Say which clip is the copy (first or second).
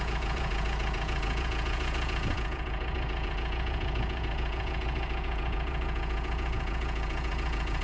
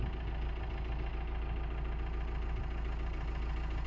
first